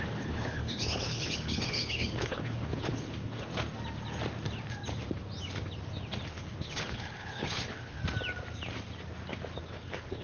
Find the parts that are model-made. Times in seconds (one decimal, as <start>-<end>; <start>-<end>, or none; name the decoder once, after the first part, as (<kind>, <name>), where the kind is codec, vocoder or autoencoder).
0.0-3.5 (codec, HILCodec); 6.3-8.0; 9.6-10.2